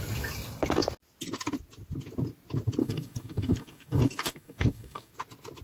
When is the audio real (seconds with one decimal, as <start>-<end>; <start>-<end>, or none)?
0.0-2.8; 5.1-5.6